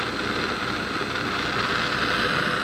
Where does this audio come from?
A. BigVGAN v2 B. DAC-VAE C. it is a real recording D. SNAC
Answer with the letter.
C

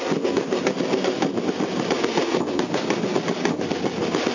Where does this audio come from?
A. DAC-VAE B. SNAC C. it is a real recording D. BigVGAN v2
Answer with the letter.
C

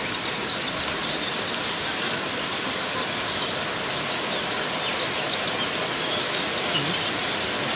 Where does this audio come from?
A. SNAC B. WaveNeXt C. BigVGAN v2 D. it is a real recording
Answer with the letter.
D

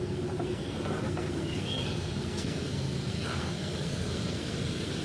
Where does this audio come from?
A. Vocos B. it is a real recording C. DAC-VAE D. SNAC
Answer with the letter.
D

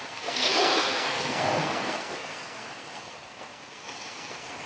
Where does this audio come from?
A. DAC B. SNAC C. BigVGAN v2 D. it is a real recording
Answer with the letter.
B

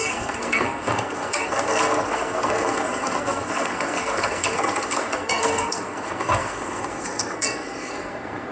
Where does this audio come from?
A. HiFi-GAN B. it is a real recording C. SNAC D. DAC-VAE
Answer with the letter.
C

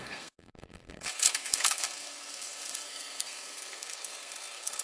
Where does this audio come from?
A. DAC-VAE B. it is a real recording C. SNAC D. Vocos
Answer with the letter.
C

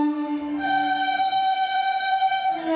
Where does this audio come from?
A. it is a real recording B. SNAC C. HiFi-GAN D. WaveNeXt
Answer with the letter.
B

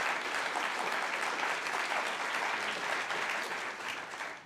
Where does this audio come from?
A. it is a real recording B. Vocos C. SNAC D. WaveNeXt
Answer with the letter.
A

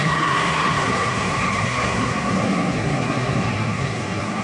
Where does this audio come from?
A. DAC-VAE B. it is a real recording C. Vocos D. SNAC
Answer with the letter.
D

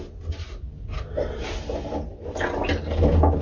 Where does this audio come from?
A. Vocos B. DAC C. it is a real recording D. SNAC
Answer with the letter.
C